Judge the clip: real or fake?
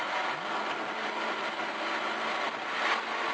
real